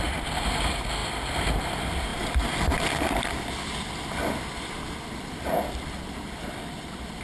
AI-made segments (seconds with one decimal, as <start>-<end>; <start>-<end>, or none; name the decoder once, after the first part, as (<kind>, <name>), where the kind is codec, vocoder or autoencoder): none